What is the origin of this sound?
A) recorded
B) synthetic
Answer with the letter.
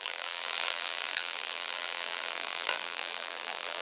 B